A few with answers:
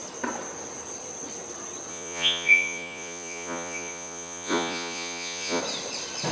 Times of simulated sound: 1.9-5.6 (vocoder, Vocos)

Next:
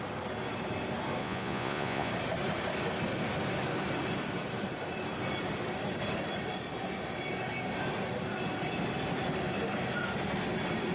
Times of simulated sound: 1.2-2.1 (vocoder, Vocos)

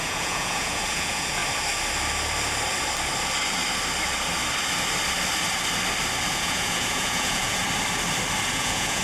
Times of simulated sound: 0.0-1.4 (vocoder, Vocos); 6.3-7.6; 8.5-9.0

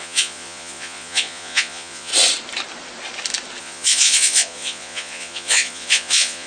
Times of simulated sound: 0.0-2.1 (vocoder, Vocos); 3.6-6.5

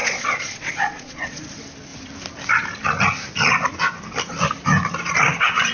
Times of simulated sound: 0.0-1.4 (vocoder, Vocos)

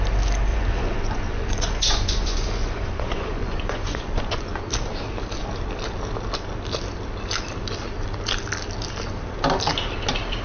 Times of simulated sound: 0.5-4.6 (vocoder, Vocos)